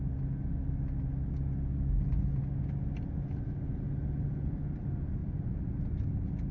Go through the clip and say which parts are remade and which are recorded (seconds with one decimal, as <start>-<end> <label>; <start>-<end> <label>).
0.0-6.5 recorded